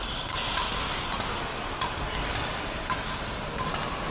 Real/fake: real